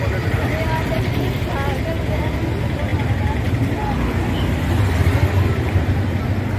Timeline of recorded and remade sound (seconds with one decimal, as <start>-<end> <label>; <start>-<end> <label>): 0.0-6.6 recorded